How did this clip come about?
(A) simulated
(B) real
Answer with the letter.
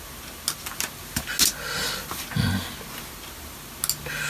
B